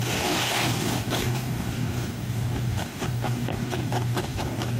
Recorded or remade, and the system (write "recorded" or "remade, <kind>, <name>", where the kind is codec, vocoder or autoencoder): remade, codec, DAC